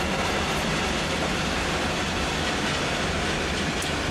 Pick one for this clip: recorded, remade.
recorded